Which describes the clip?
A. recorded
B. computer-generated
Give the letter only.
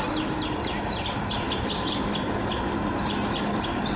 A